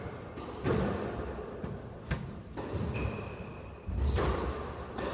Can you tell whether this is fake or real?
real